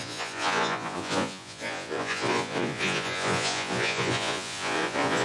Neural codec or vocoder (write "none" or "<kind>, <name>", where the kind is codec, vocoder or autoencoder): vocoder, Vocos